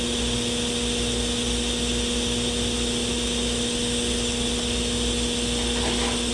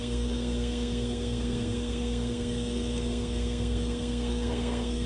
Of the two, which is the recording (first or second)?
first